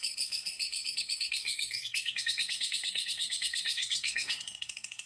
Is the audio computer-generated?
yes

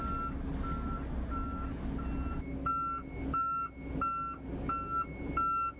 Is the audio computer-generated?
no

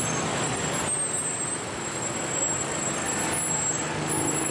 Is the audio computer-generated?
no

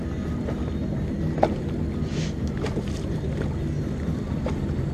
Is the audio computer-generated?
no